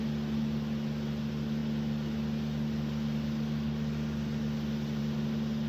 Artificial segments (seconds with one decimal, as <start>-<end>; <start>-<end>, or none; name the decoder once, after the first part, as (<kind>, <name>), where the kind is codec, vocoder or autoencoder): none